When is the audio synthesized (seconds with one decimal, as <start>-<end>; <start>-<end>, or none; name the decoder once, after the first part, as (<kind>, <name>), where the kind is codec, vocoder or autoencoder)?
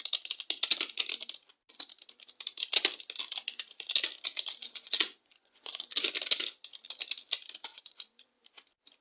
4.6-6.0 (vocoder, Vocos); 7.7-8.4